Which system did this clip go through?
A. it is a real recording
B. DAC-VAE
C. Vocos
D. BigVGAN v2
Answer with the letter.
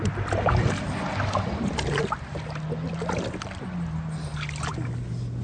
A